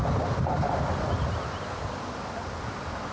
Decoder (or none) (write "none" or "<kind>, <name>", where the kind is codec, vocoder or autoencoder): none